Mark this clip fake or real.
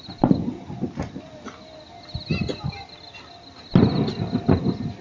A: real